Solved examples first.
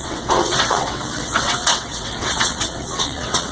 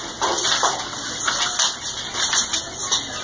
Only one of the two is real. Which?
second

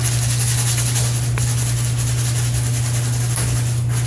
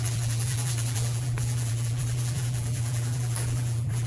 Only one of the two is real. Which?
first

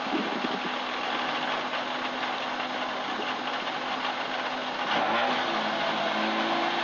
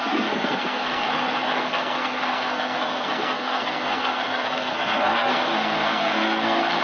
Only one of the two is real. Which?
first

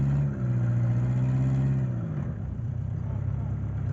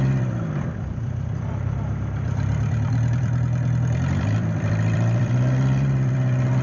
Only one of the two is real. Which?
first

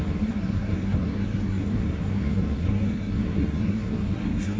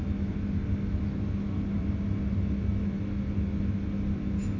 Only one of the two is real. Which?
second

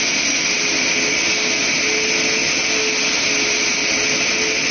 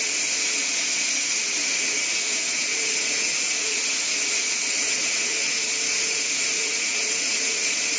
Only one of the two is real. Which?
first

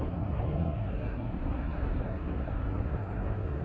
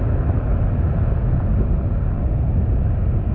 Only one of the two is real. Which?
second